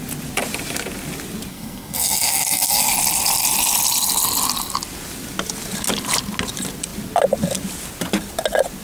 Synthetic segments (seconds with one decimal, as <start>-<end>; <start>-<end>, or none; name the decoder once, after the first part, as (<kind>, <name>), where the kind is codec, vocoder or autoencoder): 1.5-2.9 (codec, SNAC)